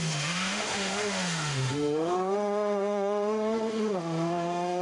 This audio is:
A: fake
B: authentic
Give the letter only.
A